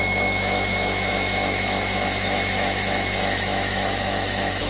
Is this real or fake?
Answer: fake